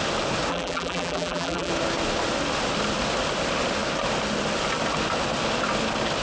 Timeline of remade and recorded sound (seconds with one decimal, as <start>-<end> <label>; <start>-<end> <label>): 0.0-0.5 recorded; 0.5-1.7 remade; 1.7-6.2 recorded